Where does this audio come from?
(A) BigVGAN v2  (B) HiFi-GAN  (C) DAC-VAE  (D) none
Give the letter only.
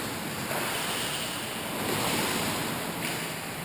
D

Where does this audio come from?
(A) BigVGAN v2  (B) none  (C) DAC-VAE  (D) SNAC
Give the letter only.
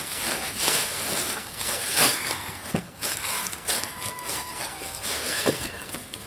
D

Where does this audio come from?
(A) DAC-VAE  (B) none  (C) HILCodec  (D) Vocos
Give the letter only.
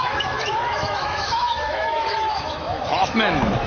A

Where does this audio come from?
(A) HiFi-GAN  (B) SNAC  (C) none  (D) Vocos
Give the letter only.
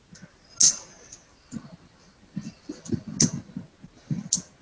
C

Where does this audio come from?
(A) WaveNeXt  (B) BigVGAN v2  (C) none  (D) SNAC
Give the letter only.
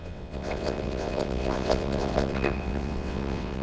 A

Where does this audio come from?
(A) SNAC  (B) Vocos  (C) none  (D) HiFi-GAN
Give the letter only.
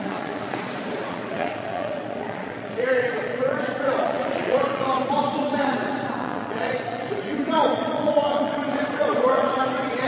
B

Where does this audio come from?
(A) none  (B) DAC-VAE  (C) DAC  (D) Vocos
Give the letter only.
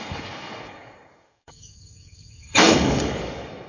C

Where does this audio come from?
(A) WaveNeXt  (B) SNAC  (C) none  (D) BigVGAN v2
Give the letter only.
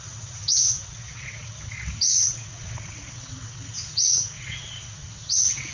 A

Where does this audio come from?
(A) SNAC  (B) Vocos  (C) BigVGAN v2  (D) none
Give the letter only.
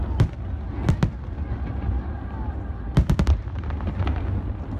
D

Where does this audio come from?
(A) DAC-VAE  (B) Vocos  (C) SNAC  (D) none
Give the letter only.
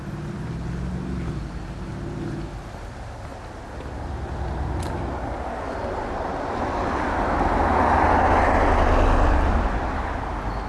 D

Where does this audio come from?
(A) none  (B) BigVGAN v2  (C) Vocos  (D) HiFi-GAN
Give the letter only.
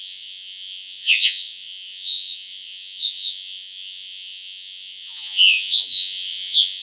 C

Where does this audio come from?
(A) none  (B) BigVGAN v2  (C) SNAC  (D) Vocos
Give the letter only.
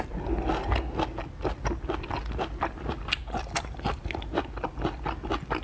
A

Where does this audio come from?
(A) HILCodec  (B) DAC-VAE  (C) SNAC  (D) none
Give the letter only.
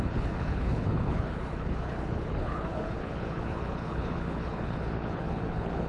A